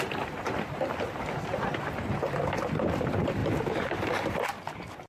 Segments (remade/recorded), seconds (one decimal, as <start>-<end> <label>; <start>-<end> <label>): 0.0-5.1 remade